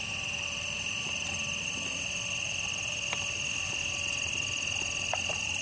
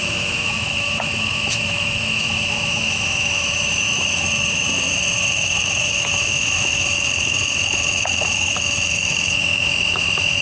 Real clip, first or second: first